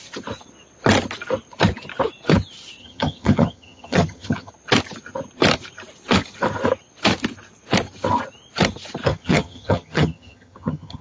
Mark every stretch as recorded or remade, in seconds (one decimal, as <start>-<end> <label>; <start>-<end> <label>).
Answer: 0.0-2.8 recorded; 2.8-4.5 remade; 4.5-9.1 recorded; 9.1-11.0 remade